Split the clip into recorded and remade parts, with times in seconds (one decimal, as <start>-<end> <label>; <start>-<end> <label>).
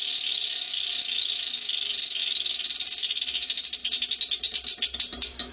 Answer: 0.0-5.5 recorded